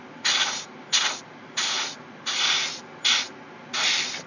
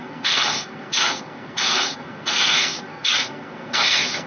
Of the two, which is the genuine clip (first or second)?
first